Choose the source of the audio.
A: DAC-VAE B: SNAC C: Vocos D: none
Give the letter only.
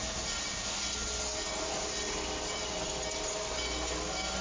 D